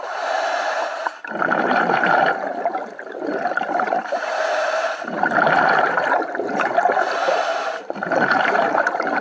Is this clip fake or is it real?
fake